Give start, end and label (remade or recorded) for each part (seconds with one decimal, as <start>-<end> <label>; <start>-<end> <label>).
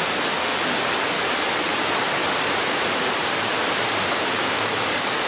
0.0-2.2 recorded; 2.2-4.8 remade; 4.8-5.3 recorded